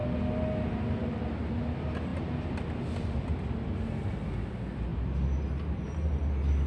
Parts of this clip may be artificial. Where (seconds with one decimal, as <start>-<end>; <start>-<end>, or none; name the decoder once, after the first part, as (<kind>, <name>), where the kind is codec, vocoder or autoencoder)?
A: none